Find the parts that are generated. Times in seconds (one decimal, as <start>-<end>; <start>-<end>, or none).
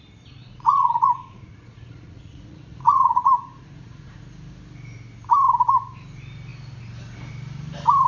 0.4-4.2